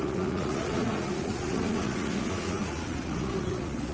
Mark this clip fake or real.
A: fake